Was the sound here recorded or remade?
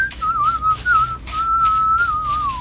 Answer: recorded